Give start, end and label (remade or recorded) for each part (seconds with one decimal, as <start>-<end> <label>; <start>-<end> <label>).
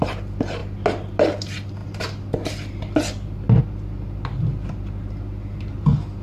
0.0-6.2 recorded